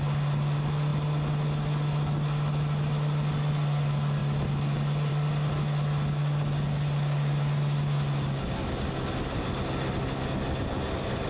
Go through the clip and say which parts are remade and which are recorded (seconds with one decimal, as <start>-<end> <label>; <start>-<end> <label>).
0.0-11.3 recorded